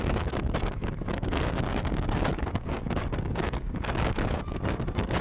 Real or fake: fake